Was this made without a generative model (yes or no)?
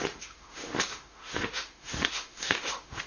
no